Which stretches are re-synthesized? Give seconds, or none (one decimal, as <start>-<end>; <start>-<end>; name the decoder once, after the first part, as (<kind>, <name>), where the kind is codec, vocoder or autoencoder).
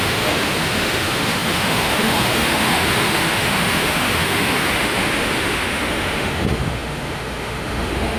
0.0-8.2 (autoencoder, DAC-VAE)